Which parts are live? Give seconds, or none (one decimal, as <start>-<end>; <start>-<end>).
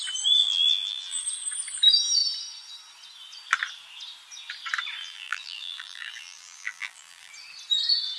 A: 0.0-0.4; 1.2-5.0; 7.3-8.2